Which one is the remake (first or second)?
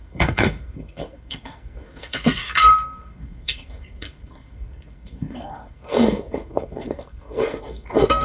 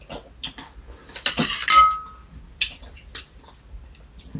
first